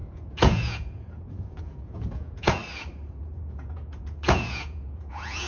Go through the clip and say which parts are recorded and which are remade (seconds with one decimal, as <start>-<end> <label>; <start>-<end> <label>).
0.0-2.6 remade; 2.6-3.2 recorded; 3.2-5.5 remade